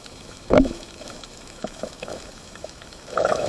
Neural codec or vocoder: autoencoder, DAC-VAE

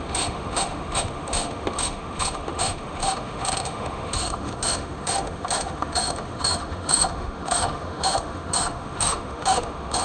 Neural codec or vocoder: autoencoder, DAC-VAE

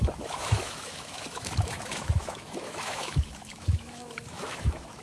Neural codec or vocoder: autoencoder, DAC-VAE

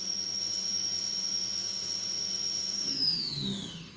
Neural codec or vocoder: autoencoder, DAC-VAE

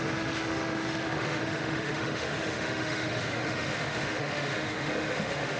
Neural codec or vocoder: autoencoder, DAC-VAE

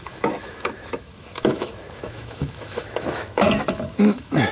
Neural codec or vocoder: autoencoder, DAC-VAE